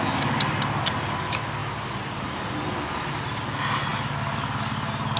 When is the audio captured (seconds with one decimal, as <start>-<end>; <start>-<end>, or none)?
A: 0.0-5.2